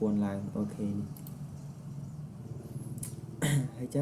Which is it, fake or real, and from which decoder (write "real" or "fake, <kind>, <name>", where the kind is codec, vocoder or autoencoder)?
real